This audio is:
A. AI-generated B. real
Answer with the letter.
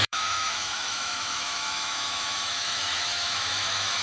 A